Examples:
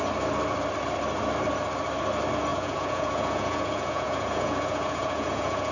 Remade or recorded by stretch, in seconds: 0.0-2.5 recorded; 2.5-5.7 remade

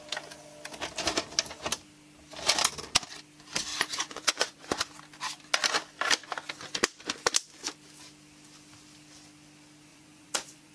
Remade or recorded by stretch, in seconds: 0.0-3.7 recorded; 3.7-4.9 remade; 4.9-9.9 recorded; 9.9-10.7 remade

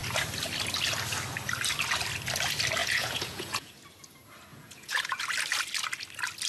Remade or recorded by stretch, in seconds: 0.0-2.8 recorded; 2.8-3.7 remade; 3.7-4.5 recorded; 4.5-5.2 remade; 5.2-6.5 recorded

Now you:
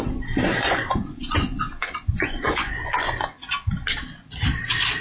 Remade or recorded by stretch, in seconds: 0.0-0.6 recorded; 0.6-3.5 remade; 3.5-5.0 recorded

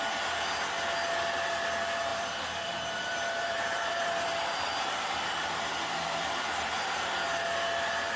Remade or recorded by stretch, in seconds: 0.0-2.1 recorded; 2.1-6.5 remade; 6.5-8.2 recorded

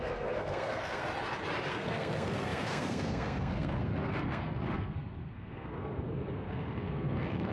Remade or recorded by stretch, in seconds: 0.0-1.0 remade; 1.0-1.7 recorded; 1.7-7.5 remade

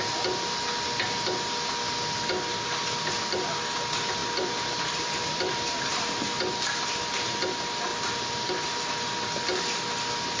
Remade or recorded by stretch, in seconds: 0.0-4.2 recorded; 4.2-6.0 remade; 6.0-7.9 recorded; 7.9-8.5 remade; 8.5-10.4 recorded

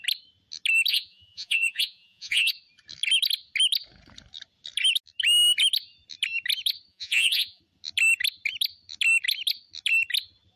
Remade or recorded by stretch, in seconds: 0.0-0.9 recorded; 0.9-2.5 remade; 2.5-6.9 recorded; 6.9-7.6 remade; 7.6-10.6 recorded